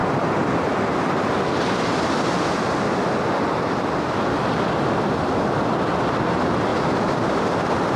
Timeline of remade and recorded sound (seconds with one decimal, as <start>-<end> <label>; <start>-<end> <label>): 0.0-8.0 recorded